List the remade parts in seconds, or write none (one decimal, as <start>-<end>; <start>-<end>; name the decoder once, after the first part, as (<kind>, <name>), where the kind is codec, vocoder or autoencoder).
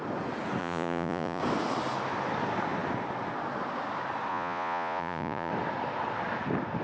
0.6-1.4 (vocoder, Vocos); 4.3-5.5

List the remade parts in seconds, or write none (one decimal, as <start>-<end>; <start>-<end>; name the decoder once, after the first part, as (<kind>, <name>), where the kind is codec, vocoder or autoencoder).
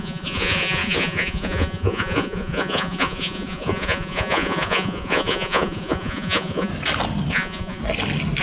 0.0-6.7 (vocoder, Vocos); 7.3-7.8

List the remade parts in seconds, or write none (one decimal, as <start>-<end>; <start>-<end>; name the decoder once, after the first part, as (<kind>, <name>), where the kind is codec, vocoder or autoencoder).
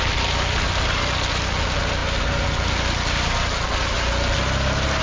none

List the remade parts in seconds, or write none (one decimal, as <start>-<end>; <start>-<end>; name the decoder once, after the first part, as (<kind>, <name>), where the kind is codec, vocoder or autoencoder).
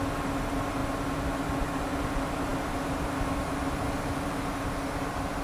none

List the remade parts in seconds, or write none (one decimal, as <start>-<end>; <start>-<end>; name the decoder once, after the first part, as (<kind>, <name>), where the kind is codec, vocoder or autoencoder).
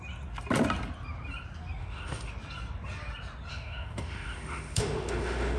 1.8-2.3 (autoencoder, DAC-VAE); 3.5-5.6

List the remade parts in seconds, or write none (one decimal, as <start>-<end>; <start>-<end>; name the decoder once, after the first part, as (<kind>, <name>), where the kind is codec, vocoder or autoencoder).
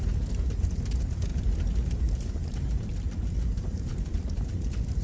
0.0-1.3 (vocoder, BigVGAN v2); 2.0-2.9; 3.5-5.0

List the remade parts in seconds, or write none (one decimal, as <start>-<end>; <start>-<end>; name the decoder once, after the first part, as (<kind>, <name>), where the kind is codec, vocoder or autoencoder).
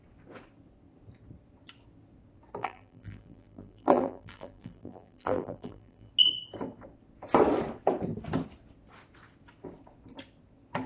2.6-6.1 (vocoder, BigVGAN v2)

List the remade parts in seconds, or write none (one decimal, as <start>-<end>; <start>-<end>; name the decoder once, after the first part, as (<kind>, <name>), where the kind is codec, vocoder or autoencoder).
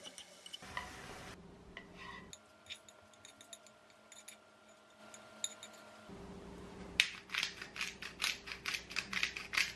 none